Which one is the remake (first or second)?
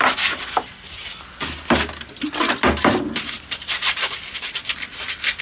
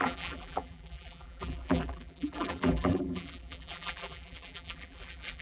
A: second